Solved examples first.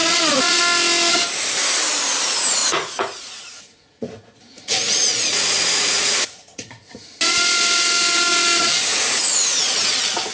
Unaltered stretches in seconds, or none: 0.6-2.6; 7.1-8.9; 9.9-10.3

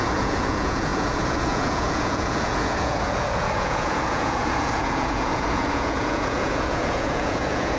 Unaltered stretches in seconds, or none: none

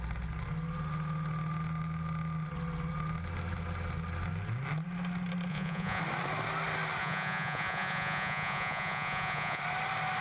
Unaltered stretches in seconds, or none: 0.0-5.5; 6.0-7.0; 9.6-10.2

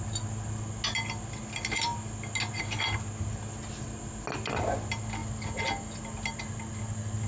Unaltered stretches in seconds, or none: 0.0-7.3

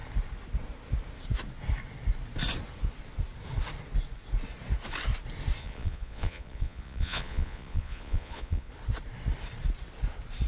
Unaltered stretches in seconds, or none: 0.0-5.6; 8.7-10.5

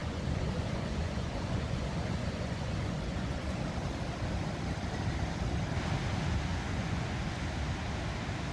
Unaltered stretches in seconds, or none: 3.6-6.5; 7.4-8.5

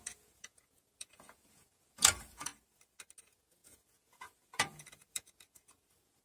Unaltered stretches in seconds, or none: 2.5-3.2

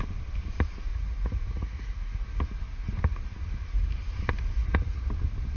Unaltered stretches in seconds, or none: 0.0-0.9; 2.2-4.6; 5.1-5.6